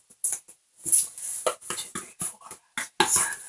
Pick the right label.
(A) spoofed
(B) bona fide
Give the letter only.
B